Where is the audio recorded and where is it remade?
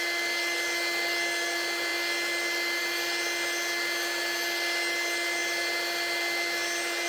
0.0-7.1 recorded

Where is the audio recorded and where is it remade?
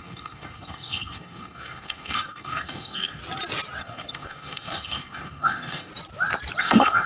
0.0-3.2 remade; 3.2-3.8 recorded; 3.8-5.9 remade; 5.9-6.6 recorded; 6.6-7.1 remade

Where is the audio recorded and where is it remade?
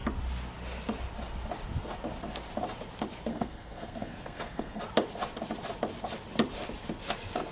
0.0-3.3 recorded; 3.3-4.8 remade; 4.8-7.5 recorded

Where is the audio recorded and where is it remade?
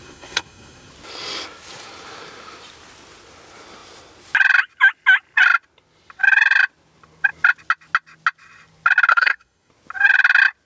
0.0-0.9 remade; 0.9-9.1 recorded; 9.1-9.7 remade; 9.7-10.7 recorded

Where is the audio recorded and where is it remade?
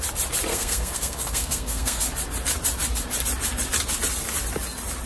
0.0-0.5 recorded; 0.5-2.0 remade; 2.0-5.1 recorded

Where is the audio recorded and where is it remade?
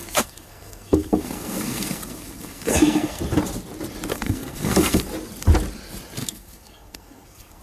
0.0-3.2 remade; 3.2-4.1 recorded; 4.1-5.0 remade; 5.0-6.2 recorded; 6.2-7.6 remade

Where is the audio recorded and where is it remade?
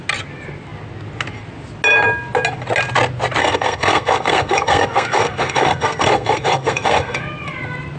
0.0-3.4 recorded; 3.4-7.2 remade; 7.2-8.0 recorded